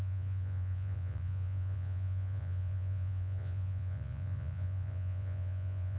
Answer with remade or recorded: remade